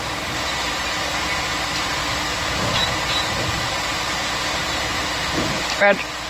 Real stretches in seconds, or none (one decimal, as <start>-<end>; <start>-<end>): 2.0-2.9; 4.6-6.3